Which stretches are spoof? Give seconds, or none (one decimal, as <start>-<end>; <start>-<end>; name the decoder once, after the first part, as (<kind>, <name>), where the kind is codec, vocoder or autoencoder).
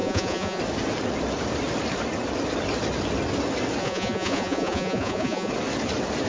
0.0-0.6 (vocoder, Vocos); 3.8-5.5